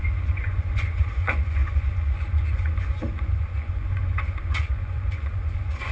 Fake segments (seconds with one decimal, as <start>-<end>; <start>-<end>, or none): 0.0-5.9